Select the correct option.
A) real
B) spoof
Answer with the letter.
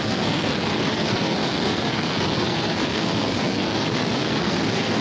B